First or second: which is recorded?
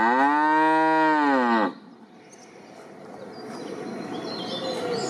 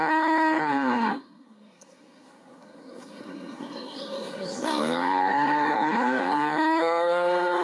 first